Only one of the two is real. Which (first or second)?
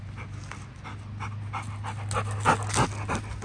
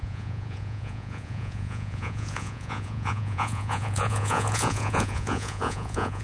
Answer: first